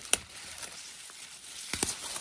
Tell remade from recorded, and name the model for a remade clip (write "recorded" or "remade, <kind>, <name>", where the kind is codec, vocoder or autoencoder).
recorded